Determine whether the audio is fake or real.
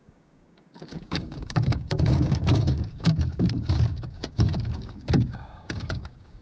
fake